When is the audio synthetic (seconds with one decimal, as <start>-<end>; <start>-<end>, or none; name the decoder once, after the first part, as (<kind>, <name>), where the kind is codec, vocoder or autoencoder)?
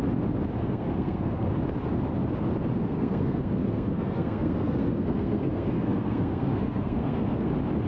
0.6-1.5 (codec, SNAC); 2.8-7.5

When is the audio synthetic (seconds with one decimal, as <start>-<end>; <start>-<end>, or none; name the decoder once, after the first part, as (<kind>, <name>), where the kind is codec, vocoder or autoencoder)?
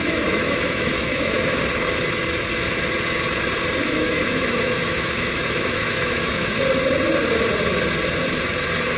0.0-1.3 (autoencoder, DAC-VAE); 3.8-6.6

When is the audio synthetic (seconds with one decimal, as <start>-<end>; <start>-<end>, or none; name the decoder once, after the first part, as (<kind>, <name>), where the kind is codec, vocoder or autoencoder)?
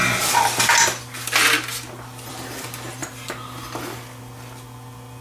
none